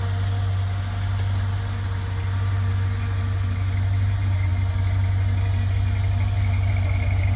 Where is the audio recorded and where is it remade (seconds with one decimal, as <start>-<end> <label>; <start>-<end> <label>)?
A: 0.0-7.4 recorded